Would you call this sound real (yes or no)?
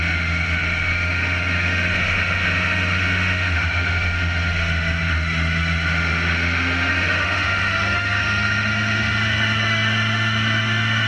no